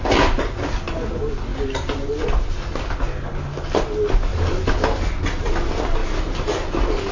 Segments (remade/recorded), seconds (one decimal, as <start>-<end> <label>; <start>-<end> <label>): 0.0-7.1 recorded